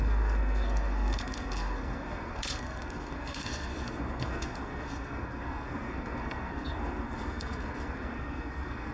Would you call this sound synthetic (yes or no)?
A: yes